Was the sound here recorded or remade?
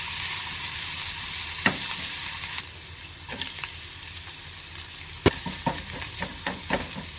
recorded